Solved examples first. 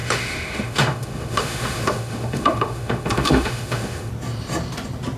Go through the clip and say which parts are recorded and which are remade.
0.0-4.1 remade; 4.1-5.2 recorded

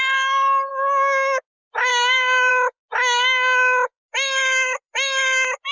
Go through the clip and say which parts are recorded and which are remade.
0.0-0.7 recorded; 0.7-1.4 remade; 1.4-1.9 recorded; 1.9-2.5 remade; 2.5-5.7 recorded

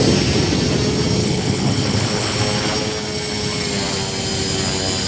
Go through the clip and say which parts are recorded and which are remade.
0.0-1.2 recorded; 1.2-2.4 remade; 2.4-5.1 recorded

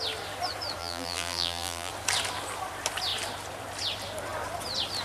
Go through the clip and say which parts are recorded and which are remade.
0.0-0.8 recorded; 0.8-1.9 remade; 1.9-5.0 recorded

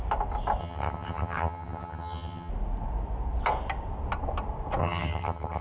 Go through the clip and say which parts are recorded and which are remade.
0.0-0.6 recorded; 0.6-2.5 remade; 2.5-4.8 recorded; 4.8-5.6 remade

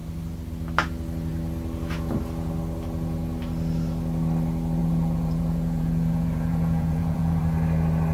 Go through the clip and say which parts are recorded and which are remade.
0.0-4.8 recorded; 4.8-7.4 remade; 7.4-8.1 recorded

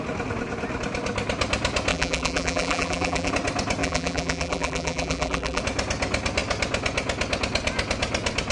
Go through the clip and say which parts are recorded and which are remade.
0.0-1.9 recorded; 1.9-3.3 remade; 3.3-3.8 recorded; 3.8-5.6 remade; 5.6-8.5 recorded

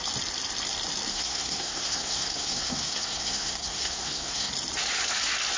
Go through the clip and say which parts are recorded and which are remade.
0.0-1.1 recorded; 1.1-4.5 remade; 4.5-5.6 recorded